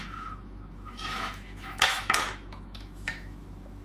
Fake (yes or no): yes